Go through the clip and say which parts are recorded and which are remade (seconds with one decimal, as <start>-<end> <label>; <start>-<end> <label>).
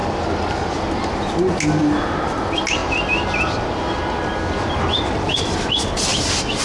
0.0-6.6 recorded